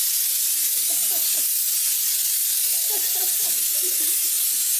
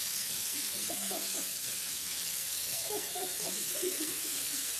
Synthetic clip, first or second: second